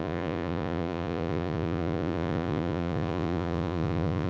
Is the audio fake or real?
fake